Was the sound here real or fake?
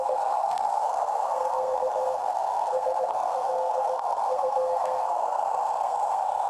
fake